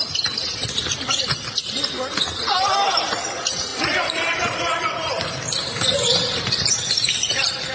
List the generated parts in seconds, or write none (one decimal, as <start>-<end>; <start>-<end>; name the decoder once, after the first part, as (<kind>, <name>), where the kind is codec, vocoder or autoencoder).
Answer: 3.7-6.4 (vocoder, BigVGAN v2)